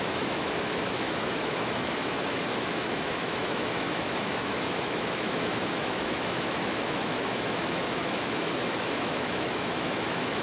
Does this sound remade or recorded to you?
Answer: remade